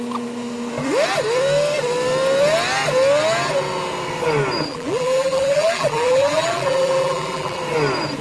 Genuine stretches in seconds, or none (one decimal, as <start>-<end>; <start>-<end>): 0.0-4.7; 7.6-8.2